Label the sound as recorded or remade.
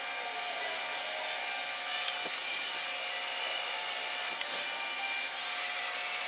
recorded